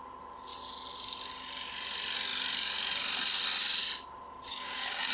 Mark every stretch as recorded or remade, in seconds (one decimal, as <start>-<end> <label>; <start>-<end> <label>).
0.0-4.5 recorded; 4.5-5.1 remade